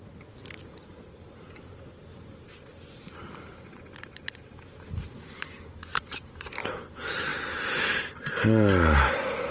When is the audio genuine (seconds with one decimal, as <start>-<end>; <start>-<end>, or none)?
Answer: 0.0-9.5